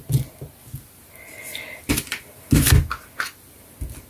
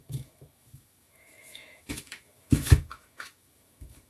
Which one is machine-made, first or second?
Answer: second